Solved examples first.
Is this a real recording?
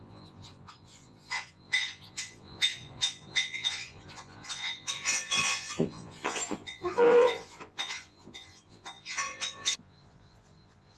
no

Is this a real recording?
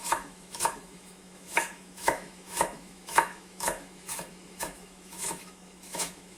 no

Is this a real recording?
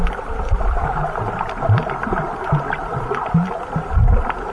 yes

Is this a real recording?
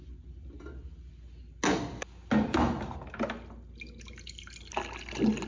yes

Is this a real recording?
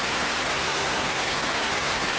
no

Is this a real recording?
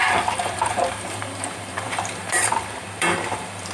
no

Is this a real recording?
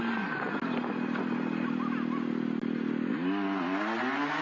yes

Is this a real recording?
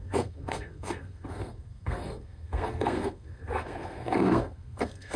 no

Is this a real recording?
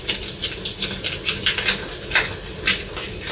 yes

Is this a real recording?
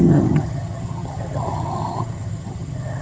no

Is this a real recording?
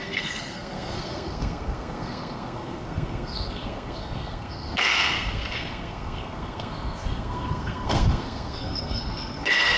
no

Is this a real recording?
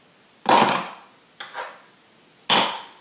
yes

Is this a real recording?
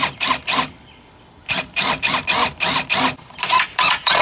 yes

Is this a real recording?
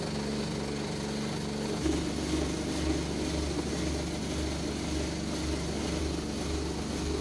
yes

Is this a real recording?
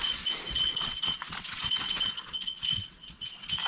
no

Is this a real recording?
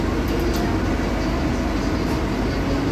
yes